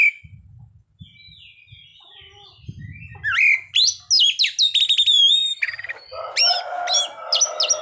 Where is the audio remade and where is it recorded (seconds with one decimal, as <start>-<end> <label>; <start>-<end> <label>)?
0.0-7.8 recorded